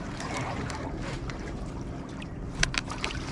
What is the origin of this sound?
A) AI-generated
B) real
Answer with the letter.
A